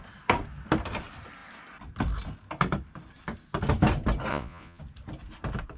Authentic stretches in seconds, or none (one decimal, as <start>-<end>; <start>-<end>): 0.0-4.3; 4.8-5.8